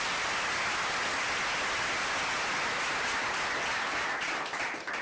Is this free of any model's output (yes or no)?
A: yes